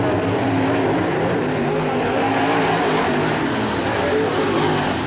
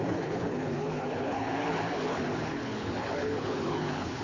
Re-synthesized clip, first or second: second